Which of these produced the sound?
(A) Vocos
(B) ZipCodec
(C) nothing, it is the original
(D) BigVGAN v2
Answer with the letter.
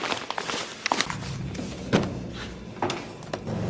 C